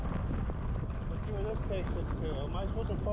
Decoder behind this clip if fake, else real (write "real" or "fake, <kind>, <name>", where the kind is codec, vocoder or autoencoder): real